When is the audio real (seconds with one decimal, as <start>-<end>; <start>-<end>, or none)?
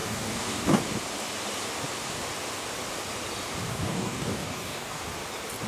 0.8-3.7; 5.0-5.7